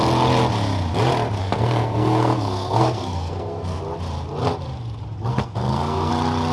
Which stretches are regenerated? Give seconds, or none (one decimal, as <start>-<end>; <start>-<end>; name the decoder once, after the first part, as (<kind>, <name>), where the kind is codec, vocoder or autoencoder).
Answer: 1.4-3.8 (codec, SNAC); 5.3-6.1